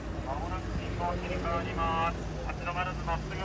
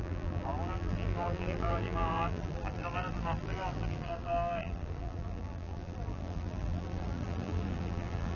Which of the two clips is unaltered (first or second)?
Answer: first